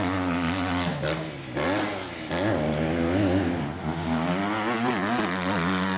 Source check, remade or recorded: recorded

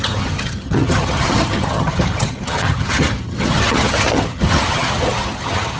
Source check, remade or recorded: remade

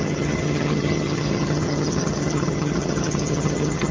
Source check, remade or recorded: remade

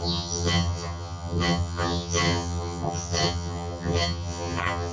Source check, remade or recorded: remade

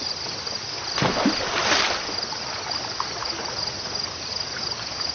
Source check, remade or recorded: recorded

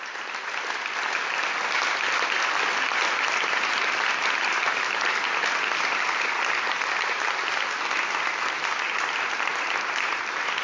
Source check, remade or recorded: recorded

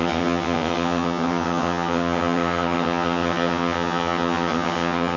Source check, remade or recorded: remade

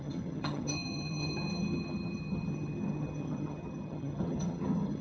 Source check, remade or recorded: remade